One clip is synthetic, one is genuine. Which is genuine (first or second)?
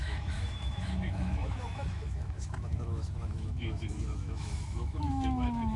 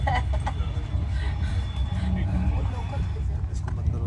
second